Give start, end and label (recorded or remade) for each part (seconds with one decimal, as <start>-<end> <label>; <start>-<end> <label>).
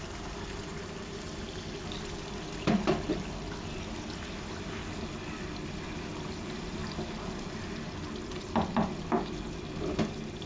0.0-10.5 recorded